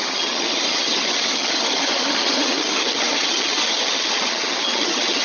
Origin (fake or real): fake